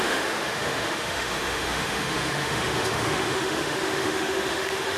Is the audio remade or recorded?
remade